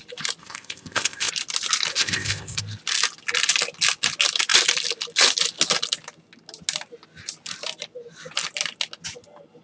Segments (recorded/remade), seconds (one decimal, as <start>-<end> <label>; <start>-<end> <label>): 0.0-0.4 recorded; 0.4-1.3 remade; 1.3-1.9 recorded; 1.9-2.6 remade; 2.6-9.6 recorded